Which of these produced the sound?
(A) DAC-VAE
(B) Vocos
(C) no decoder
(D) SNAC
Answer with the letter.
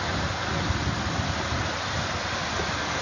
C